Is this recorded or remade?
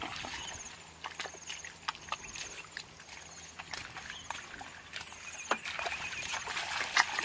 recorded